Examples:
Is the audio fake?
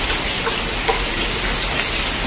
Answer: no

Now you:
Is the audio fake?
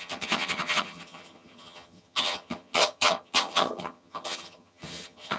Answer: yes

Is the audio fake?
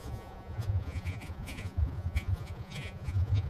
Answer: yes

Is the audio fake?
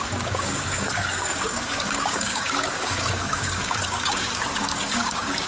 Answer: yes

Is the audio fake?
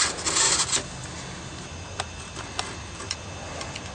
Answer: no